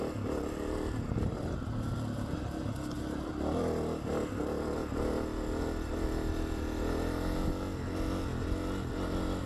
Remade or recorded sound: recorded